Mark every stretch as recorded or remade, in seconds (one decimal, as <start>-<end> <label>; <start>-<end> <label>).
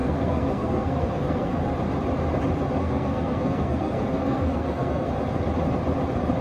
0.0-1.7 remade; 1.7-2.8 recorded; 2.8-5.1 remade; 5.1-6.4 recorded